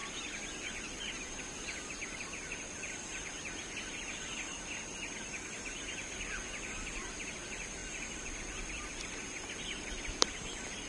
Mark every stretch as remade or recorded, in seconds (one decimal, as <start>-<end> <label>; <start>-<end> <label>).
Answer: 0.0-10.9 recorded